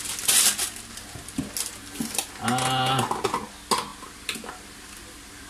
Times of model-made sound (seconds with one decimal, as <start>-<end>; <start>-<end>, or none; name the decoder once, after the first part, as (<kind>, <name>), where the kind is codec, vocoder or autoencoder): none